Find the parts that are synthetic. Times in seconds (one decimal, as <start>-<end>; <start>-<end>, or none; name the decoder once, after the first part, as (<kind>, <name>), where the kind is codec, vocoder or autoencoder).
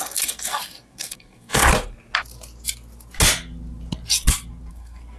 0.0-1.6 (codec, SNAC); 4.7-5.2